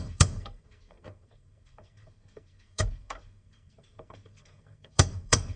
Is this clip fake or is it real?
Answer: fake